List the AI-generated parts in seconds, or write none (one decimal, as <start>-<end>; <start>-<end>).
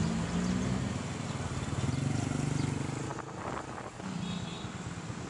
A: none